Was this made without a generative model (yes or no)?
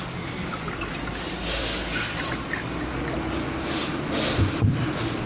yes